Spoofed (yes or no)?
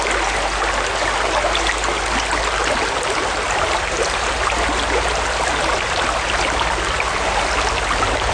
no